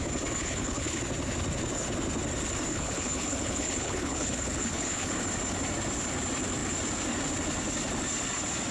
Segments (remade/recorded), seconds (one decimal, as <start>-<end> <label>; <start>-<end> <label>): 0.0-0.4 recorded; 0.4-1.0 remade; 1.0-2.7 recorded; 2.7-5.1 remade; 5.1-8.7 recorded